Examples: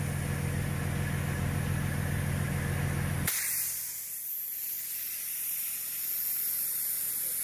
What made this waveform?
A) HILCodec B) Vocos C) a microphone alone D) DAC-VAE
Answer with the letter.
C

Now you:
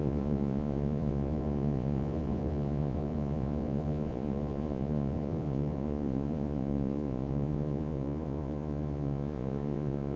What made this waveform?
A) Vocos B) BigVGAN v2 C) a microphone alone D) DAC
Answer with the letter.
A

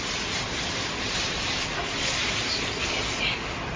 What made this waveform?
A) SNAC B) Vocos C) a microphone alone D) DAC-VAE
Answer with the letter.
C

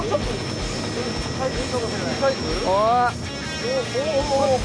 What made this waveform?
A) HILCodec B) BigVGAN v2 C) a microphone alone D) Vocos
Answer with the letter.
C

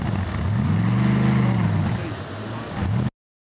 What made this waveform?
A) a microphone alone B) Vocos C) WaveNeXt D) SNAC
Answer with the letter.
A